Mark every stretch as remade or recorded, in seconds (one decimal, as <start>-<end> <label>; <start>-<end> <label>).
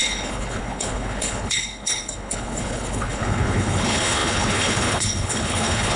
0.0-6.0 remade